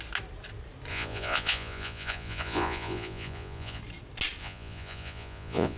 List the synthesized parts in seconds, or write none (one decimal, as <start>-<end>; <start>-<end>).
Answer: 0.9-3.8; 4.4-5.8